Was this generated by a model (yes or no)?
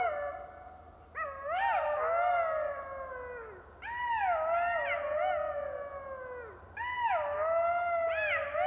no